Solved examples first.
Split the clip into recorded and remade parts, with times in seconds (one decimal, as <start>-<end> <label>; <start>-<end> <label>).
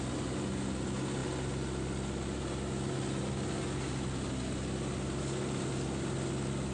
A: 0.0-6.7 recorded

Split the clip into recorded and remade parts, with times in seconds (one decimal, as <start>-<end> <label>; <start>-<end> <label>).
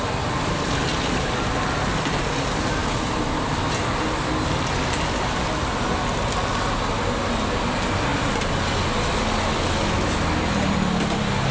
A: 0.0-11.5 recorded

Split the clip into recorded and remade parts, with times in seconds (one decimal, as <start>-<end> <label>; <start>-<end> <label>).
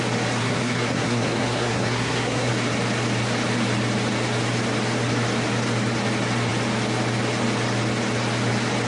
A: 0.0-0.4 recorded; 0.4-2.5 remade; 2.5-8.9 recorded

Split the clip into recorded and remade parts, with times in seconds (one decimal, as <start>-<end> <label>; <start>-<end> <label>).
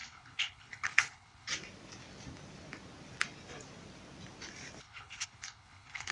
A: 0.0-1.5 remade; 1.5-4.8 recorded; 4.8-6.1 remade